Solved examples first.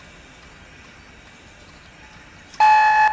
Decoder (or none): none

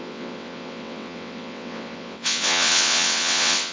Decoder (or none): vocoder, WaveNeXt